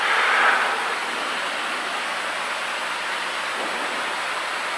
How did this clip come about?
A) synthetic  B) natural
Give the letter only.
B